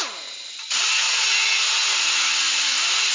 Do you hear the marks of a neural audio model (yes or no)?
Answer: no